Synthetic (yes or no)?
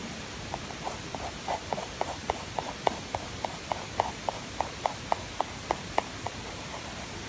no